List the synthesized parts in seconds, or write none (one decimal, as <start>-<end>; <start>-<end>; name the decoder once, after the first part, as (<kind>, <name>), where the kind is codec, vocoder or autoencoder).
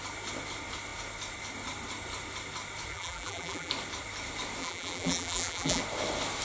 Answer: 2.9-3.7 (vocoder, BigVGAN v2); 4.6-5.8